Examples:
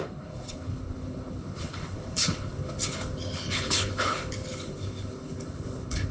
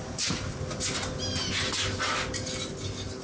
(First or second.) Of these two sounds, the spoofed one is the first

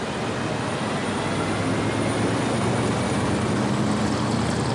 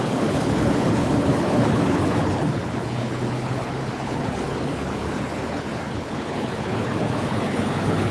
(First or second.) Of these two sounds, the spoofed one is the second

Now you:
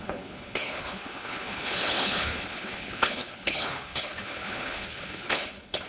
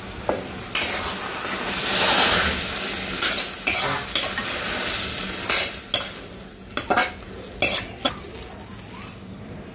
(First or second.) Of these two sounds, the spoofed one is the first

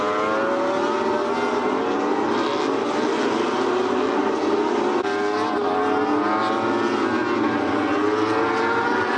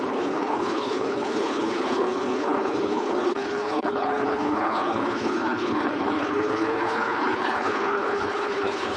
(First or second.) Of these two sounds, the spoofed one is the second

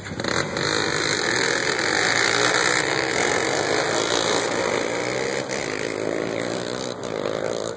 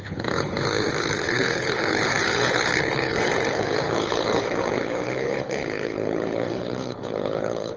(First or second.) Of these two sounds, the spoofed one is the second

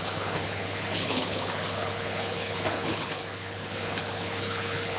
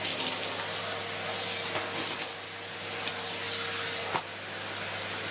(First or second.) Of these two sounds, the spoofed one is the first